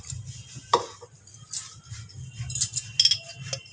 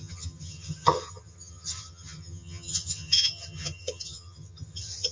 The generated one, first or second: second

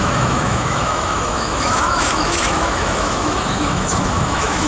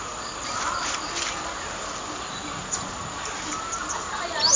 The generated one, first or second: first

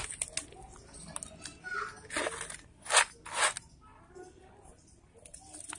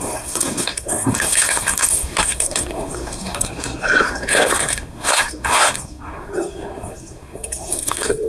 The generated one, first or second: second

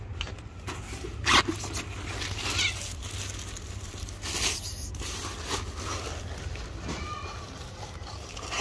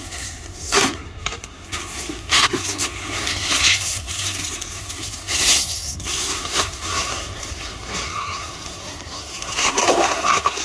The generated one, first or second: second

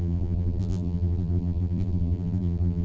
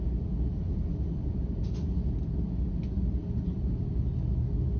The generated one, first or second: first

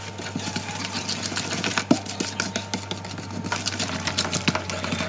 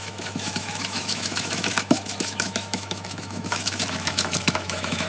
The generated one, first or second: second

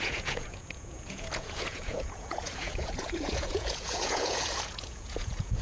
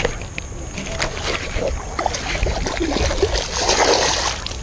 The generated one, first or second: first